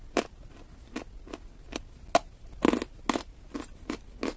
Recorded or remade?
recorded